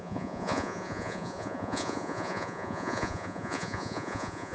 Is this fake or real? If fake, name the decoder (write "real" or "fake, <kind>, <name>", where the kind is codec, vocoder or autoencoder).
fake, vocoder, Vocos